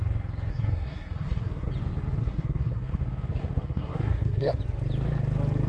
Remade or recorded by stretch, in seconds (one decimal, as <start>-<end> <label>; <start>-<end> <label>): 0.0-0.5 recorded; 0.5-1.7 remade; 1.7-2.2 recorded; 2.2-3.0 remade; 3.0-3.4 recorded; 3.4-4.6 remade; 4.6-5.7 recorded